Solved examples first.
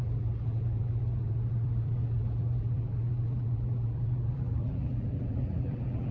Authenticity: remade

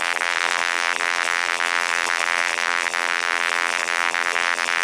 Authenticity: remade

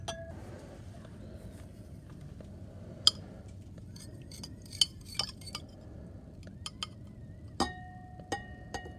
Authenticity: recorded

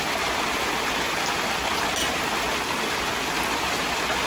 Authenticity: recorded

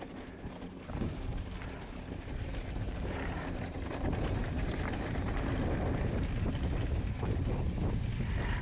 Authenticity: remade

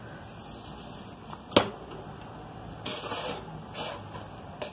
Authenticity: recorded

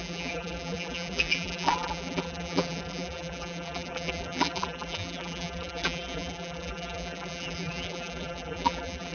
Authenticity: remade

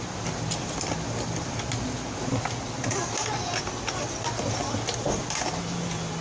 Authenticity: recorded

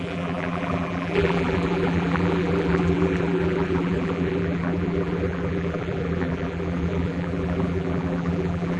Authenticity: remade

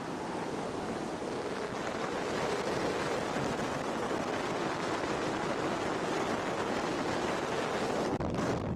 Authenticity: recorded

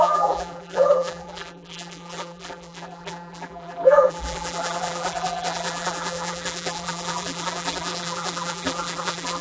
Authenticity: remade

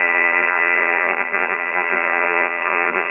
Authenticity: remade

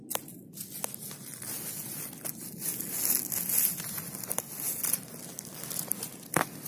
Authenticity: recorded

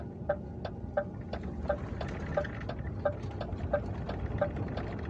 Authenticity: recorded